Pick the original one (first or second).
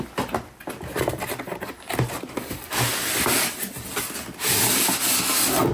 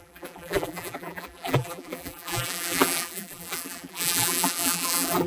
first